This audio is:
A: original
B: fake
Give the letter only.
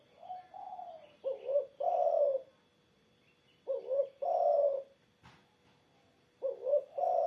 A